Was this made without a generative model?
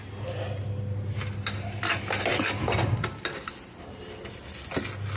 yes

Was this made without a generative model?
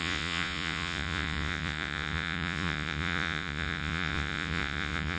no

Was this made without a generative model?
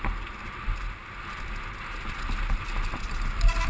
yes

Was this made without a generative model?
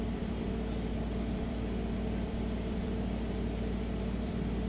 no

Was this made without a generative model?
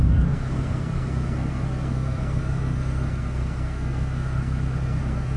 no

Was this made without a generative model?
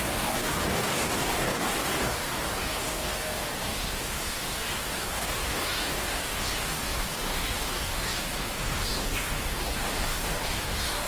no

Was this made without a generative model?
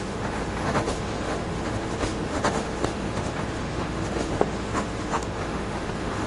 no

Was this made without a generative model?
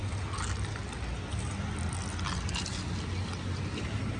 yes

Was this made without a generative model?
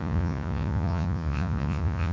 no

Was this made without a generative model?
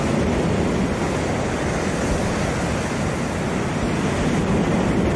yes